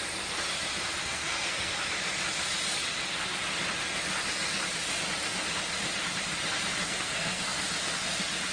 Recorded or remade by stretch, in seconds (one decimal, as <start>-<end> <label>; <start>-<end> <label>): 0.0-1.0 recorded; 1.0-1.7 remade; 1.7-6.8 recorded; 6.8-7.6 remade; 7.6-8.5 recorded